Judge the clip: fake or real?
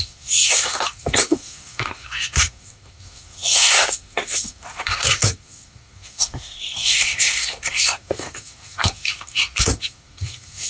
fake